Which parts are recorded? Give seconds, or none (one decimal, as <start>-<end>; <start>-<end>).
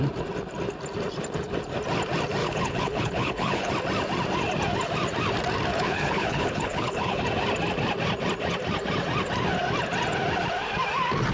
0.0-2.4; 3.7-5.7; 7.2-11.3